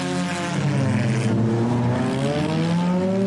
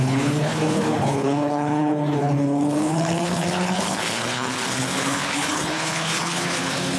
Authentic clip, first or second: first